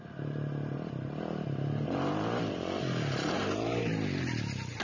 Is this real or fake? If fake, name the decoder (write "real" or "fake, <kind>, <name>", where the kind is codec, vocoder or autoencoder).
fake, vocoder, BigVGAN v2